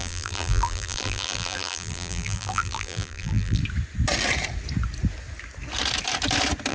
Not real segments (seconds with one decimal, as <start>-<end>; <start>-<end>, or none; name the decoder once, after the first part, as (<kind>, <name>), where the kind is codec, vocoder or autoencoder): 0.0-3.6 (vocoder, BigVGAN v2)